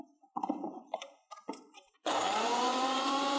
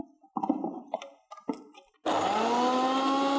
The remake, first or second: first